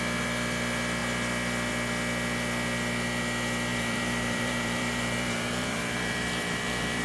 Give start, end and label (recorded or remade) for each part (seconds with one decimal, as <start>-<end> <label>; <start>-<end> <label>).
0.0-3.7 recorded; 3.7-7.0 remade